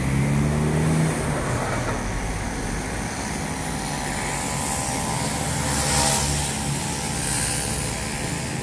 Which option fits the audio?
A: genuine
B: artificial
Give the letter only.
A